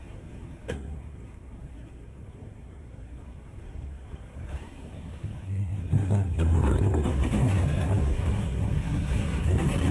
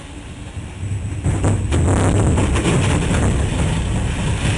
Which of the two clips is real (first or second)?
second